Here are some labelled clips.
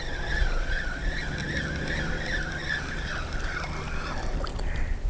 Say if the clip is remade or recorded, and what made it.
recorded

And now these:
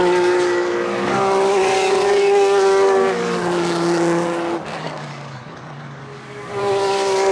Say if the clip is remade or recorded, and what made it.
remade, codec, DAC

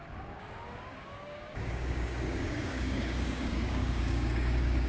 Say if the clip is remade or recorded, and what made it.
remade, codec, DAC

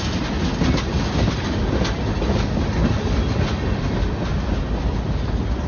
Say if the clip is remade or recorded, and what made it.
recorded